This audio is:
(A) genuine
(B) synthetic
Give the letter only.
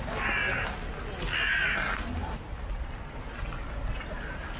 A